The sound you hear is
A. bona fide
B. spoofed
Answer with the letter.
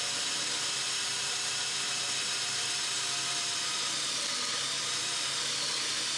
A